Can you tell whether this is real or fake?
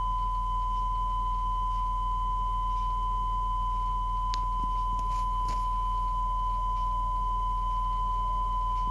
real